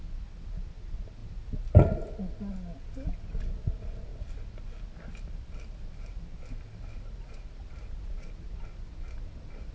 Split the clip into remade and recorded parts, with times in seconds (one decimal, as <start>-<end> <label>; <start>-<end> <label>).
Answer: 0.0-9.7 recorded